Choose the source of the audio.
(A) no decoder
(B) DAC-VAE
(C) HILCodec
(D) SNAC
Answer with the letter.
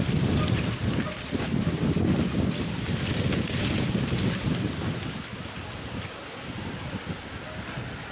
A